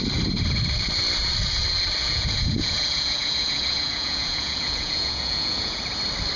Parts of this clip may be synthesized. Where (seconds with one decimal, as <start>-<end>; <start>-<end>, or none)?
2.0-5.8